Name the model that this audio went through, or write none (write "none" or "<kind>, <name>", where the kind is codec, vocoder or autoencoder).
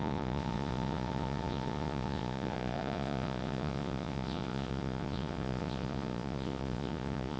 vocoder, Vocos